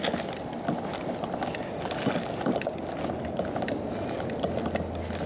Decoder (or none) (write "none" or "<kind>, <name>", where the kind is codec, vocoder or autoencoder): none